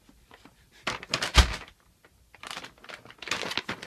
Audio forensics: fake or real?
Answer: real